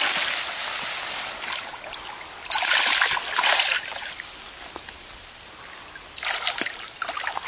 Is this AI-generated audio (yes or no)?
no